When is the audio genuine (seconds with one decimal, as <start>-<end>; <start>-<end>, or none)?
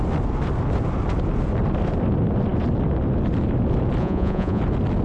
0.0-4.0; 4.6-5.0